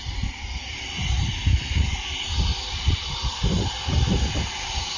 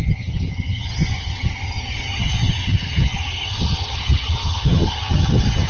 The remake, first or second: second